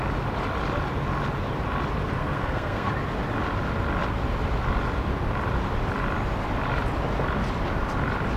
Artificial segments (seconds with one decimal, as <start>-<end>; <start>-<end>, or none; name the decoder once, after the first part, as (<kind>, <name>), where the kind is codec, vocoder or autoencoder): 2.2-2.9 (codec, SNAC)